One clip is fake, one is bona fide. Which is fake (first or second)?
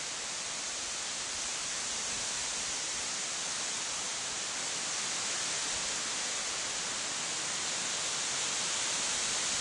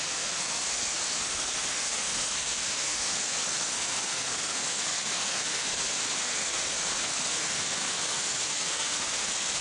second